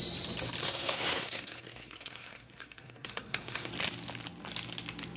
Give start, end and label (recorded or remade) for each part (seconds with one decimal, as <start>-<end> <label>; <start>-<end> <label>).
0.0-0.6 recorded; 0.6-3.7 remade; 3.7-5.2 recorded